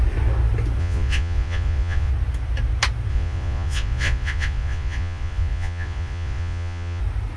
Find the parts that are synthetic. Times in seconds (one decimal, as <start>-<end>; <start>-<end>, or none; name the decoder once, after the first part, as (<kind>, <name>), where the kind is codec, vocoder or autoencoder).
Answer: 0.8-2.1 (vocoder, Vocos); 3.1-7.0